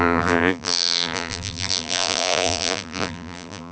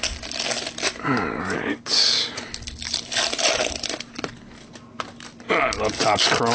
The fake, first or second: first